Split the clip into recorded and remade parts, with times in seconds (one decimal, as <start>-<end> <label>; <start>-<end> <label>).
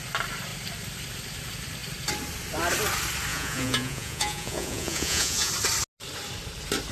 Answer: 0.0-3.3 recorded; 3.3-5.5 remade; 5.5-6.9 recorded